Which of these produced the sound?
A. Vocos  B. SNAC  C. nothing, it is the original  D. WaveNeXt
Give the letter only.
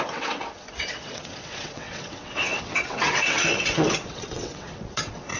D